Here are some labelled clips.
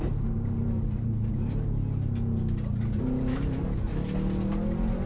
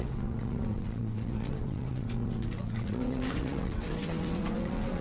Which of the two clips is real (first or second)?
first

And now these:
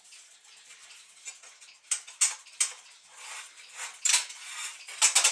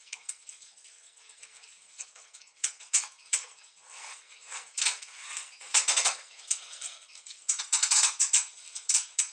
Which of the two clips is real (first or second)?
first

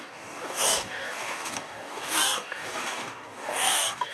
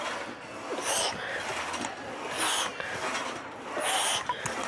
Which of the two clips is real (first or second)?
second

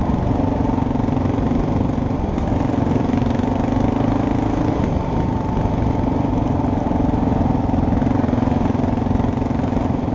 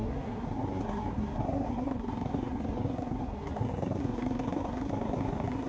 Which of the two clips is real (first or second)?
first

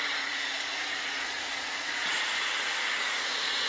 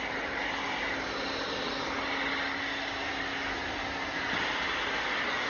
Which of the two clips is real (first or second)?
second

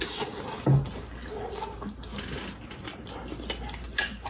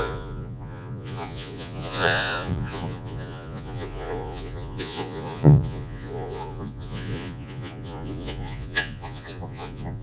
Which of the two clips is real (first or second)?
first